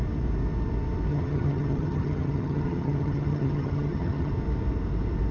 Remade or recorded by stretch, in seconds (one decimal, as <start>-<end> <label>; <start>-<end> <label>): 0.0-1.1 recorded; 1.1-4.3 remade; 4.3-5.3 recorded